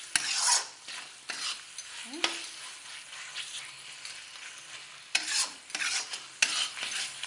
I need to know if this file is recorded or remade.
recorded